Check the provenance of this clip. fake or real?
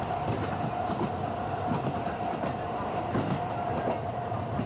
real